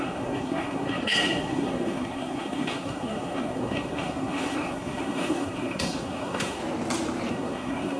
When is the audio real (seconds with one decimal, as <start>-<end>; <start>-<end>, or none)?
6.6-7.3